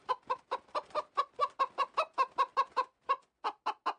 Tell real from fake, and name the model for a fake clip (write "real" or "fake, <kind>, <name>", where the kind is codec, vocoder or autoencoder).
real